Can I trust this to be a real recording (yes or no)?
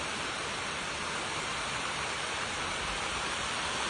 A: no